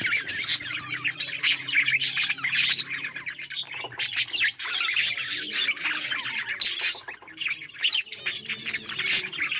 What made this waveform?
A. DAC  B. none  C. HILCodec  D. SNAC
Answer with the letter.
B